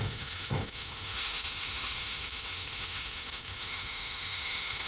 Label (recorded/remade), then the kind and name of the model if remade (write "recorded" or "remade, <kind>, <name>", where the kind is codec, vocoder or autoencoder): remade, autoencoder, DAC-VAE